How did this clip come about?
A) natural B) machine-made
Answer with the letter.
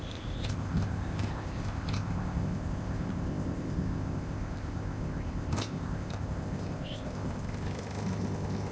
B